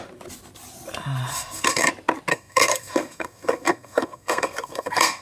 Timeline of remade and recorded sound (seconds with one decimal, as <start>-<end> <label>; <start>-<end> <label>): 0.0-1.3 recorded; 1.3-1.9 remade; 1.9-2.3 recorded; 2.3-5.2 remade